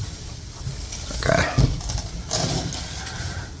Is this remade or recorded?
recorded